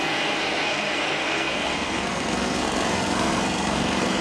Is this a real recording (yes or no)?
no